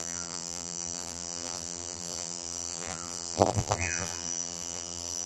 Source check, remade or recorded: remade